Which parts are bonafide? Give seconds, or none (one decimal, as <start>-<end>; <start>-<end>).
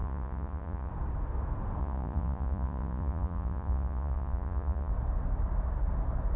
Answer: 0.9-1.8; 4.9-6.4